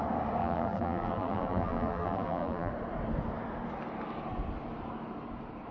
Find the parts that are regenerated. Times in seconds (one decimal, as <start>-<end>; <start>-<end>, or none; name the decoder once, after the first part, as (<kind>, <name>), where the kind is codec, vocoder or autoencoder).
0.4-2.7 (vocoder, BigVGAN v2)